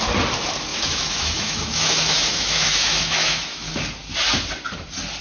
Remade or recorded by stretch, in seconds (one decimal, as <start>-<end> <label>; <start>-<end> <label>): 0.0-0.7 recorded; 0.7-3.8 remade; 3.8-5.2 recorded